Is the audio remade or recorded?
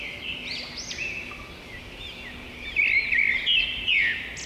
recorded